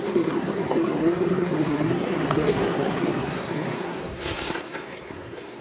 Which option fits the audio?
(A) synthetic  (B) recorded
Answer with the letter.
A